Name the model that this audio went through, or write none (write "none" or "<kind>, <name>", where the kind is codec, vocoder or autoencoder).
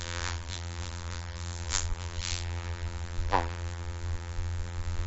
vocoder, BigVGAN v2